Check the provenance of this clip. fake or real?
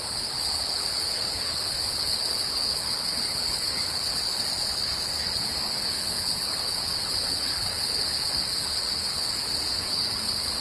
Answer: fake